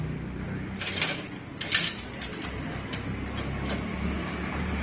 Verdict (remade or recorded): recorded